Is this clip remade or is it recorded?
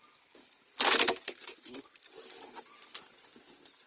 recorded